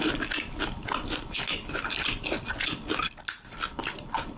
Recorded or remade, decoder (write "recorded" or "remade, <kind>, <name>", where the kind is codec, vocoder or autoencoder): recorded